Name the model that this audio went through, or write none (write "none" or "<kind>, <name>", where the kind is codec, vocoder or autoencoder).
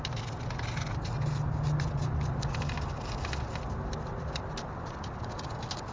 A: none